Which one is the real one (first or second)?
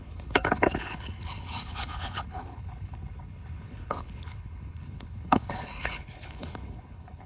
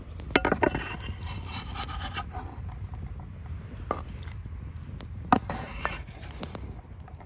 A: second